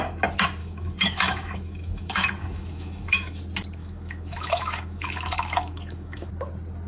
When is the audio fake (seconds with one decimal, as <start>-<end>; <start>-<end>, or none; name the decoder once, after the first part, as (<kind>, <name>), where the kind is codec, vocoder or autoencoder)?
0.6-3.4 (autoencoder, DAC-VAE); 3.8-6.3